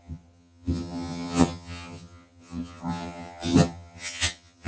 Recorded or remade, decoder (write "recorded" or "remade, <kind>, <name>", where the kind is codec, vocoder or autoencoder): remade, vocoder, HiFi-GAN